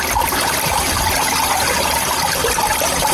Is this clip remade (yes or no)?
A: no